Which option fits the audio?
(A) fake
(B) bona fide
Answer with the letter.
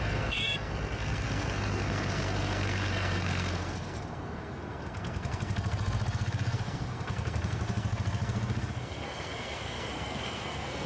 A